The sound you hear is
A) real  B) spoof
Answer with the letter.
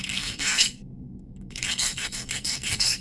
B